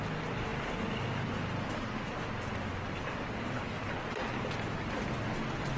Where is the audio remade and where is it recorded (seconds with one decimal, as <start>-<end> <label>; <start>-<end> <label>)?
0.0-5.8 recorded